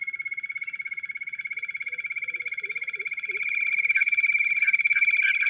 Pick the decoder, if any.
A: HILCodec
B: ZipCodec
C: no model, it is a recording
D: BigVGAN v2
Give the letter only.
C